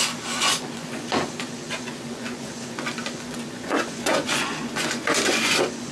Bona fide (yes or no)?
no